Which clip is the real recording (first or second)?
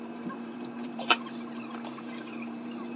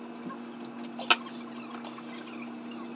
second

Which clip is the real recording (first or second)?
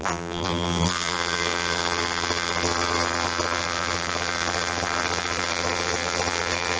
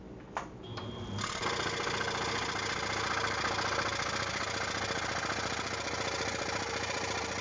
second